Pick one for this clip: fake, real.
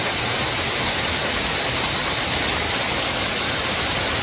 real